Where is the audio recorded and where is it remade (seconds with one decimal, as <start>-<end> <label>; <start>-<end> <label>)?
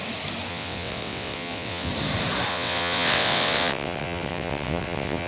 0.0-0.5 recorded; 0.5-1.9 remade; 1.9-2.5 recorded; 2.5-5.3 remade